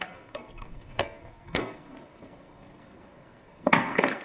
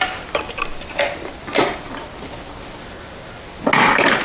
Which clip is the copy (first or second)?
first